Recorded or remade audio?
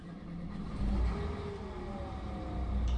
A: recorded